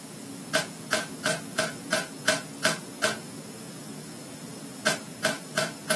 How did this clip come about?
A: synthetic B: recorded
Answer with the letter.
A